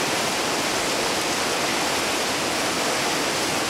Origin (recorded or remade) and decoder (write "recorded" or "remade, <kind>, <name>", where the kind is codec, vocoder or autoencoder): recorded